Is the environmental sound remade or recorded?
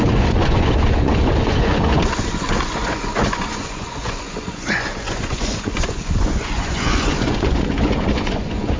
remade